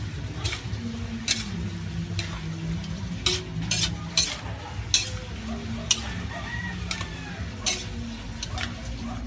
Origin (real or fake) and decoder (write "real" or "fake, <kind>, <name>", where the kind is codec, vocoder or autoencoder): real